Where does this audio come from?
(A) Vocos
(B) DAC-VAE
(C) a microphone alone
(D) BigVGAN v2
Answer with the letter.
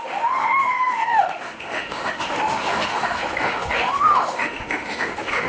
B